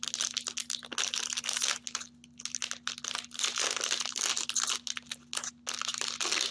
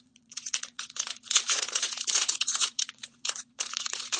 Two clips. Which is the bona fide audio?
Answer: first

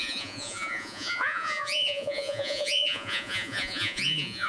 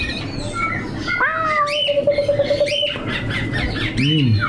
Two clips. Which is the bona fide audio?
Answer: second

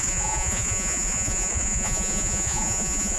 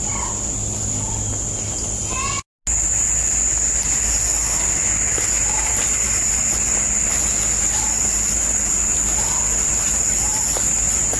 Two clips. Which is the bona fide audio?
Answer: second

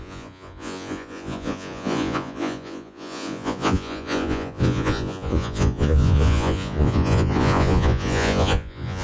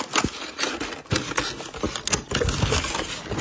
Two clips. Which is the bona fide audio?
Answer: second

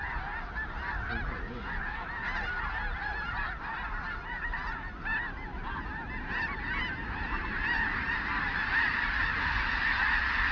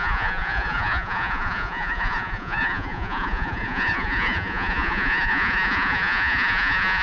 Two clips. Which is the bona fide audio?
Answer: first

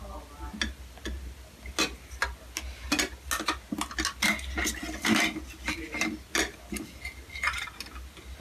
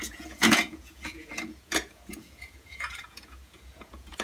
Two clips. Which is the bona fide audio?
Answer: first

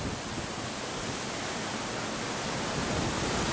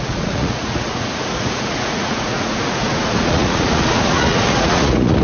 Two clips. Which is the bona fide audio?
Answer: first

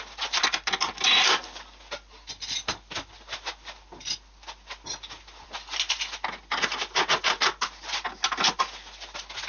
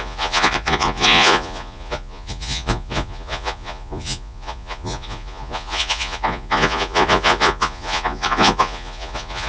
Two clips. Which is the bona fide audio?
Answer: first